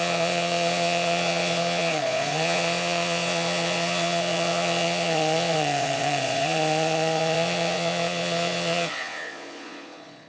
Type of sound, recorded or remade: remade